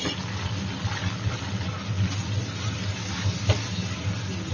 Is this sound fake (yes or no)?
no